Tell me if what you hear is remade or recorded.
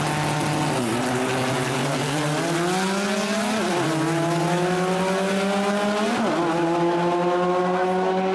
recorded